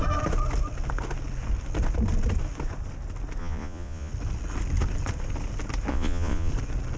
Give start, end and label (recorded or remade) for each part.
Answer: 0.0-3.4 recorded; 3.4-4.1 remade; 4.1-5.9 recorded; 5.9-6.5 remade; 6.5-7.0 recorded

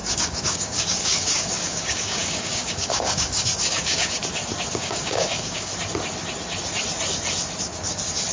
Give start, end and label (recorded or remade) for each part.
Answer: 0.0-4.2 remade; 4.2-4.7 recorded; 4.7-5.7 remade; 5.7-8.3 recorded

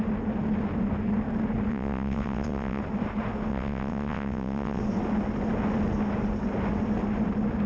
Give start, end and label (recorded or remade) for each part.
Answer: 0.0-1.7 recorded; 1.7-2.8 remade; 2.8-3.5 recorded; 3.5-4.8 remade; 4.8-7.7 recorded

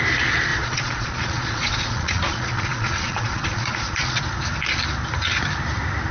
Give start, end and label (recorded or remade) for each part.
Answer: 0.0-0.5 recorded; 0.5-4.2 remade; 4.2-6.1 recorded